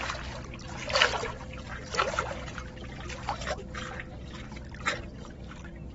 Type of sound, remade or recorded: recorded